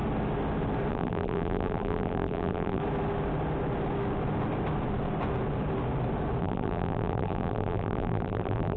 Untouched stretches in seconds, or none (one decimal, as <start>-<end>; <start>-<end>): 0.0-0.9; 2.8-6.4